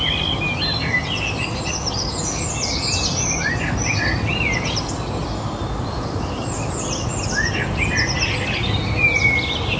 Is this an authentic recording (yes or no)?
yes